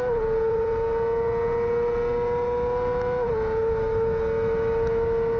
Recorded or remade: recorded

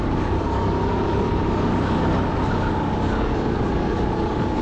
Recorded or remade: remade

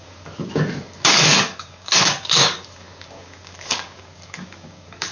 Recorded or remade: remade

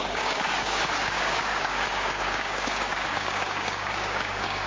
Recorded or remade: remade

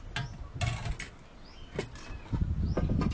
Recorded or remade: recorded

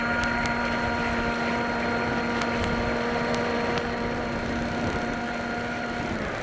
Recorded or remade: recorded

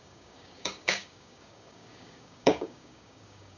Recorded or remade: remade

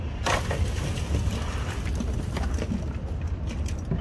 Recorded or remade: recorded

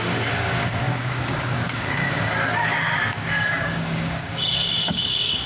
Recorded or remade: remade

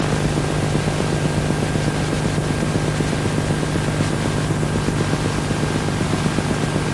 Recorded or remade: recorded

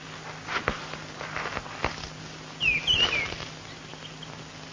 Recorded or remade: recorded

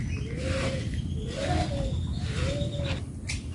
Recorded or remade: recorded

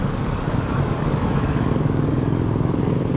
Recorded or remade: remade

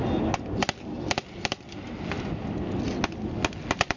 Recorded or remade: recorded